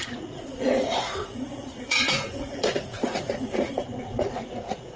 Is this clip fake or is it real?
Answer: fake